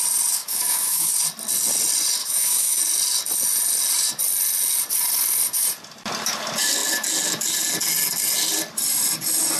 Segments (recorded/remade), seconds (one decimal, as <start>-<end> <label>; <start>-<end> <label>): 0.0-0.4 recorded; 0.4-1.1 remade; 1.1-2.2 recorded; 2.2-2.8 remade; 2.8-9.6 recorded